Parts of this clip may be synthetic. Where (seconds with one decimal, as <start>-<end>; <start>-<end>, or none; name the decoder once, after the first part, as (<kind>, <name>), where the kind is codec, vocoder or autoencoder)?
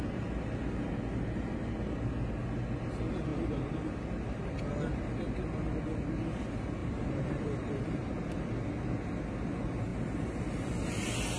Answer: 6.8-8.1 (vocoder, BigVGAN v2); 9.9-10.9